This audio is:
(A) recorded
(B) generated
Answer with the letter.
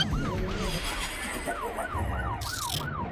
A